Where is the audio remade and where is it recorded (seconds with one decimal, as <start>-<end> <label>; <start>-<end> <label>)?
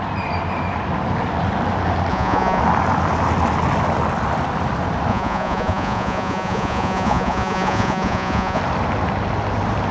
0.0-2.1 recorded; 2.1-2.6 remade; 2.6-5.1 recorded; 5.1-8.6 remade; 8.6-9.9 recorded